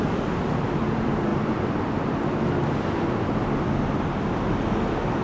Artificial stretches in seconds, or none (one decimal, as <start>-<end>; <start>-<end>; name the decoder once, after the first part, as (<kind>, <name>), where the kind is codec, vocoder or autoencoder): none